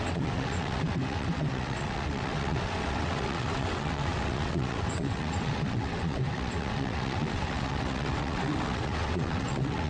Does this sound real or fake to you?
fake